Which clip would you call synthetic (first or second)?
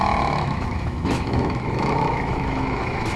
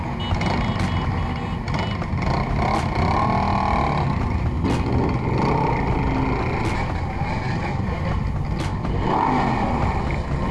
first